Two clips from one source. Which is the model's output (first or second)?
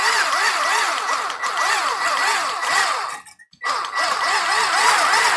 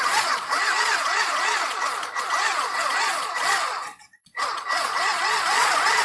second